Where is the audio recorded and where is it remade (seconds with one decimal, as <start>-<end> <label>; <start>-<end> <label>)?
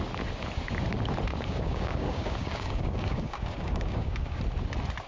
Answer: 0.0-1.3 recorded; 1.3-4.4 remade; 4.4-5.1 recorded